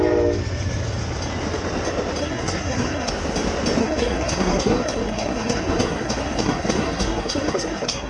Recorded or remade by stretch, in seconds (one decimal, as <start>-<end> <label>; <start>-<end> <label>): 0.0-2.2 recorded; 2.2-3.1 remade; 3.1-3.8 recorded; 3.8-8.1 remade